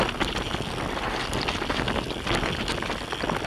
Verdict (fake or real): real